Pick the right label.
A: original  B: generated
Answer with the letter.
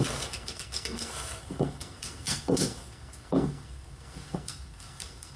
B